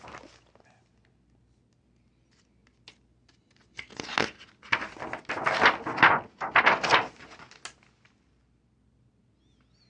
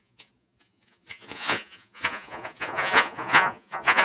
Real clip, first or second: first